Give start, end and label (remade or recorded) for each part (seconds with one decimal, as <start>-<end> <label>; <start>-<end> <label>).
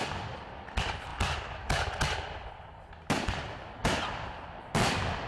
0.0-5.3 recorded